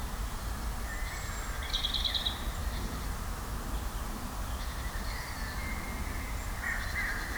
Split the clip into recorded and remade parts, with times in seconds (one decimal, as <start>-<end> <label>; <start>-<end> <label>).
0.0-2.1 remade; 2.1-7.4 recorded